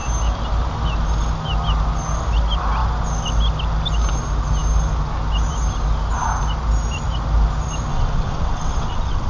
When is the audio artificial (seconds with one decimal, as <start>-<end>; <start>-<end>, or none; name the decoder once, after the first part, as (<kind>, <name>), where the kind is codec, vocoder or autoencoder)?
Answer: 7.9-9.3 (vocoder, WaveNeXt)